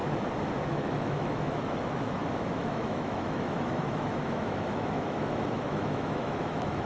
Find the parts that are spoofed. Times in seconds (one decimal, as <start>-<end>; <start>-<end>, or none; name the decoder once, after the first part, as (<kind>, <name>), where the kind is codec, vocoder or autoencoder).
0.7-6.9 (autoencoder, DAC-VAE)